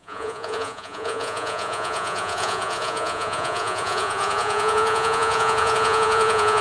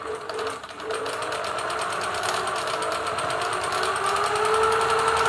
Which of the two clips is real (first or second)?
second